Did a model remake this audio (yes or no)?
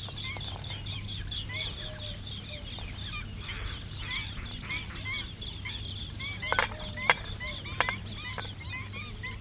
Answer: no